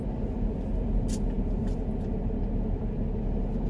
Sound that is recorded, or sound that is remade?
recorded